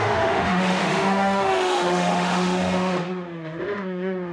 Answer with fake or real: fake